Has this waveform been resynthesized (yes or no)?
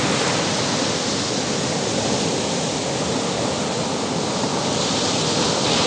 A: no